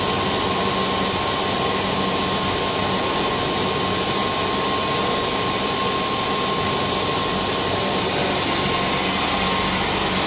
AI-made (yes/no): no